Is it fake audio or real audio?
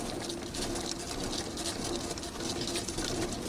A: real